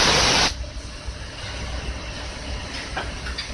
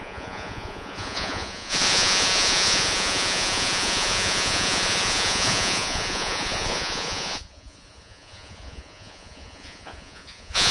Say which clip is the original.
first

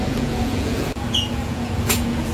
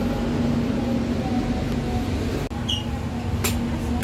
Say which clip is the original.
second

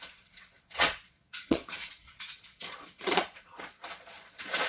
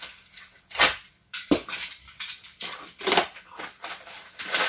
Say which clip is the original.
second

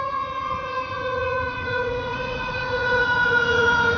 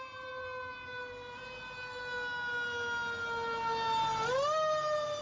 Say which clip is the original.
second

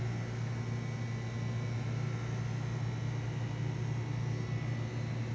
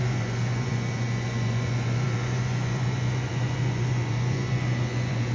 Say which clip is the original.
first